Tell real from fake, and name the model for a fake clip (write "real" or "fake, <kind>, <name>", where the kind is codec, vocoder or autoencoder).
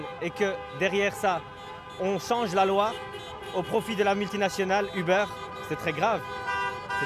real